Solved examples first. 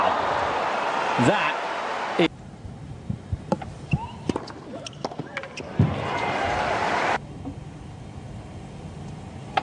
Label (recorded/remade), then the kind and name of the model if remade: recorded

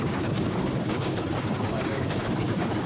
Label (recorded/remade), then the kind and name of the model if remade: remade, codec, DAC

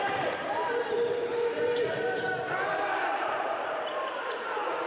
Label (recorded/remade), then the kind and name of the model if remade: remade, vocoder, BigVGAN v2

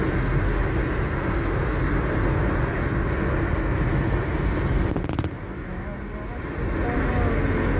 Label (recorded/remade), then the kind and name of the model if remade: recorded